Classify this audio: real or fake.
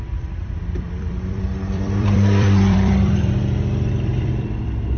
fake